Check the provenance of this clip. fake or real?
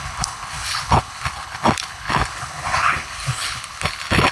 fake